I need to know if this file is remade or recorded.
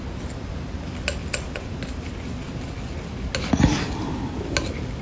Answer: recorded